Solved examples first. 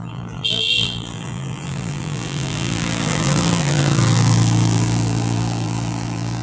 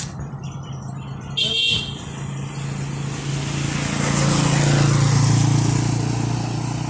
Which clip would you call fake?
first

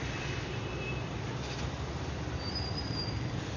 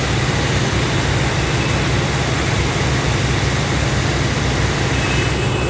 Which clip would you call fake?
first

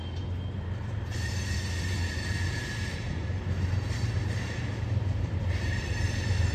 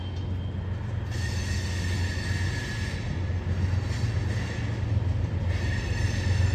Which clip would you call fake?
first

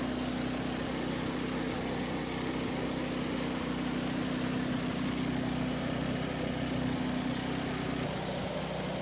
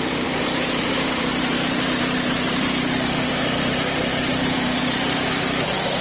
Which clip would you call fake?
second